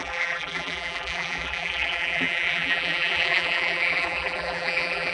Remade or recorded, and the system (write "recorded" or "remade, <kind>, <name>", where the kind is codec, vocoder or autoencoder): remade, vocoder, BigVGAN v2